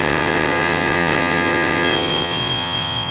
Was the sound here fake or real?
fake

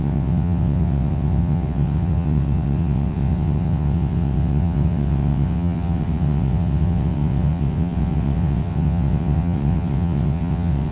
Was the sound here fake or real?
fake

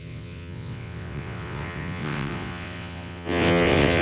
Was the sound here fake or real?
fake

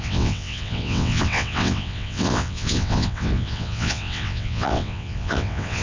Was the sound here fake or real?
fake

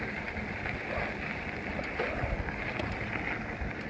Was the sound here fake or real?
real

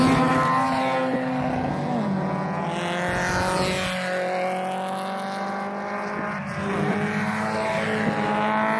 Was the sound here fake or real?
real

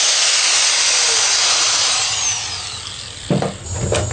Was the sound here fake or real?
real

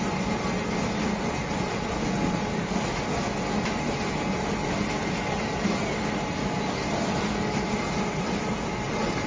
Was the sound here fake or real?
real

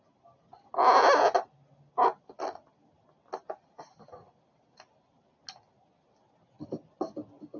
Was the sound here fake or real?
real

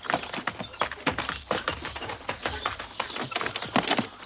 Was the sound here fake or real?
real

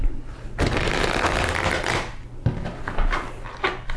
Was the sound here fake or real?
real